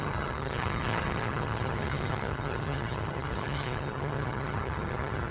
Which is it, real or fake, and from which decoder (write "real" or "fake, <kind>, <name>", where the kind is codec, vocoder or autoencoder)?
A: fake, vocoder, HiFi-GAN